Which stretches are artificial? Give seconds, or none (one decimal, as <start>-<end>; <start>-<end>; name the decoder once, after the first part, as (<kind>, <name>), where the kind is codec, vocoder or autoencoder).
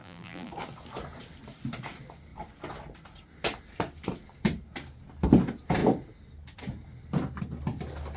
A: 0.0-0.5 (vocoder, BigVGAN v2)